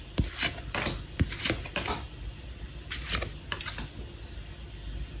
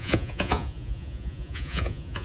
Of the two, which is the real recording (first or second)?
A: first